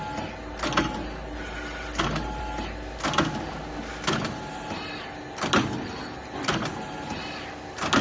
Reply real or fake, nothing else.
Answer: real